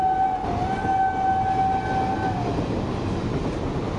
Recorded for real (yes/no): yes